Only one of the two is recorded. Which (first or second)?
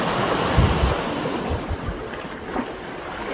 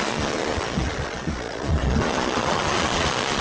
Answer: first